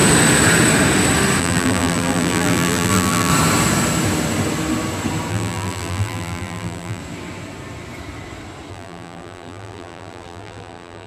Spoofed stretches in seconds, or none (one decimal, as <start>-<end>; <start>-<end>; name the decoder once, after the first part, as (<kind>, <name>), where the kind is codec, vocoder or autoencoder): 1.4-3.3 (vocoder, BigVGAN v2); 5.3-7.0; 8.7-11.1